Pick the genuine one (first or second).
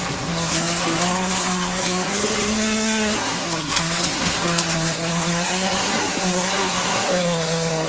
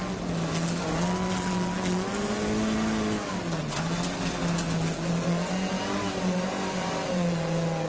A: second